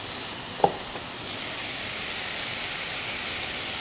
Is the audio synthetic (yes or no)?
no